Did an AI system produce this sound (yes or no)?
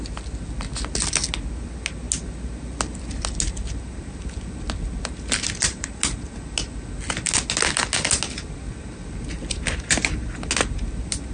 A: no